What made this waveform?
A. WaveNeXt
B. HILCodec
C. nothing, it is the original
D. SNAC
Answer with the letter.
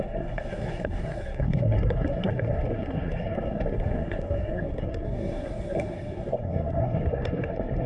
D